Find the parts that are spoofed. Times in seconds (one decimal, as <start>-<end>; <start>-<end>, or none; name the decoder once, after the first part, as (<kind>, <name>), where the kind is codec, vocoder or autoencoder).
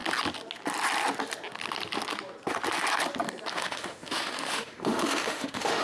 3.5-5.8 (autoencoder, DAC-VAE)